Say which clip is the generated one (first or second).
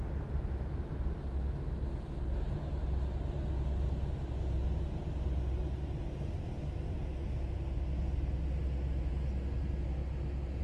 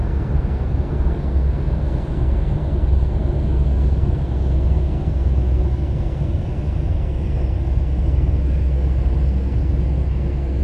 second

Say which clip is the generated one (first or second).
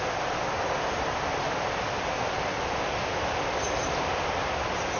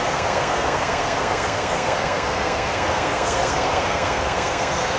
second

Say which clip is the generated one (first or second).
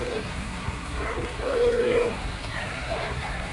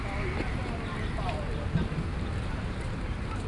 first